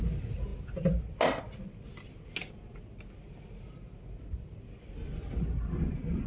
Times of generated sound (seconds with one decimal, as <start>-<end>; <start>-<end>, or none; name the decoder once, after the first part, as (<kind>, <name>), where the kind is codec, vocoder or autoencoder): none